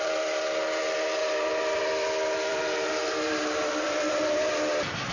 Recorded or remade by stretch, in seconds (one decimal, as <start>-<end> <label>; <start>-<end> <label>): 0.0-1.2 recorded; 1.2-1.8 remade; 1.8-2.5 recorded; 2.5-4.5 remade; 4.5-5.1 recorded